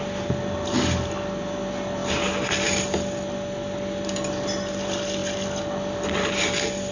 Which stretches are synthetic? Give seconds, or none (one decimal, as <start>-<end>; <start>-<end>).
0.0-2.0; 4.5-5.2; 5.9-6.9